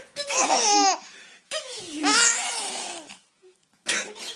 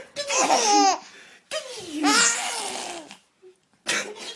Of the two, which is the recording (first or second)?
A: second